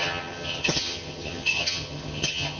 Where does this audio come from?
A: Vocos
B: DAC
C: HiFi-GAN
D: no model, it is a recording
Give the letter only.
C